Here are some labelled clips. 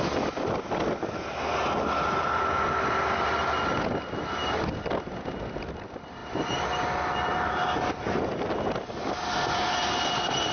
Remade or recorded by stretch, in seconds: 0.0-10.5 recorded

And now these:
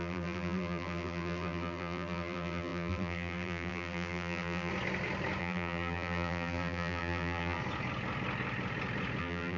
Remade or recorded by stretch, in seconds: 0.0-4.7 remade; 4.7-5.4 recorded; 5.4-7.6 remade; 7.6-9.2 recorded; 9.2-9.6 remade

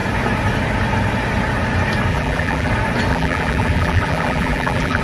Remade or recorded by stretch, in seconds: 0.0-2.1 recorded; 2.1-2.7 remade; 2.7-3.1 recorded; 3.1-5.0 remade

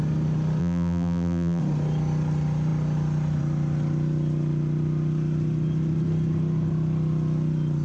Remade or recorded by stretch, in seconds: 0.0-0.6 recorded; 0.6-1.6 remade; 1.6-7.8 recorded